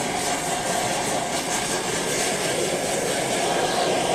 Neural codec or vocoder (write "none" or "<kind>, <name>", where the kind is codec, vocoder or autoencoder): none